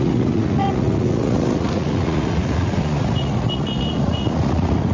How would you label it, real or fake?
fake